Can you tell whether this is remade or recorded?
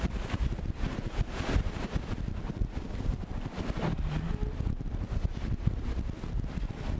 recorded